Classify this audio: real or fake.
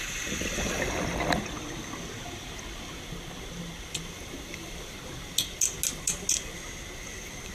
real